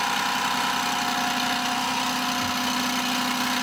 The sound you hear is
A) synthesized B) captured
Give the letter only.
B